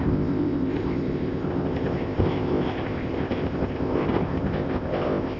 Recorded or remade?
remade